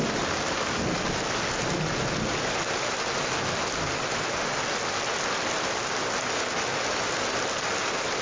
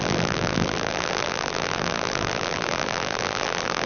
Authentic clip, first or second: first